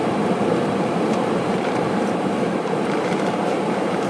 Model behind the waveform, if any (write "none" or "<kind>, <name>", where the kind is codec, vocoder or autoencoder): vocoder, BigVGAN v2